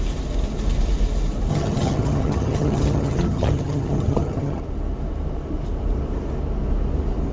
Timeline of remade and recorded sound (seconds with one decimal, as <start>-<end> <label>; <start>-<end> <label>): 0.0-1.5 recorded; 1.5-4.6 remade; 4.6-7.3 recorded